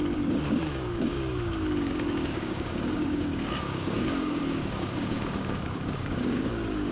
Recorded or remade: remade